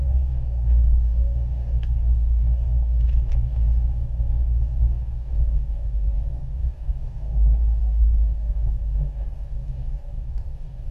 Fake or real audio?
fake